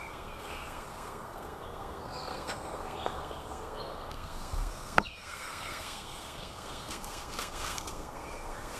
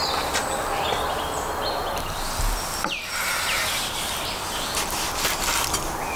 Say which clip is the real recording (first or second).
second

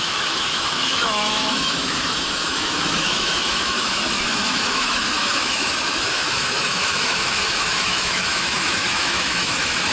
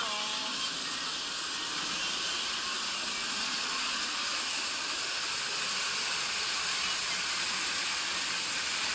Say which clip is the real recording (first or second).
second